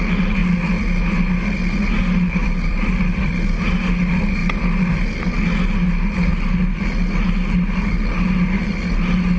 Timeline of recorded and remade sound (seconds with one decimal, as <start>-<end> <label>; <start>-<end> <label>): 0.0-2.4 recorded; 2.4-3.6 remade; 3.6-9.4 recorded